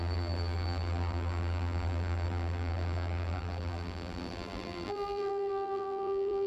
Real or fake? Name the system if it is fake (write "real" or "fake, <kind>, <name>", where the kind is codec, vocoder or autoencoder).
fake, vocoder, BigVGAN v2